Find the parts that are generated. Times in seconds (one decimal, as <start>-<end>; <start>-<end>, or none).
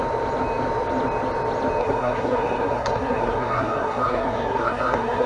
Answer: 1.8-5.3